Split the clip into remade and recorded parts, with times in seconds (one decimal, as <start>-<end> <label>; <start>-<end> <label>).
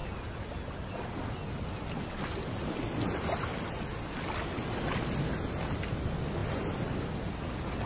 0.0-7.9 recorded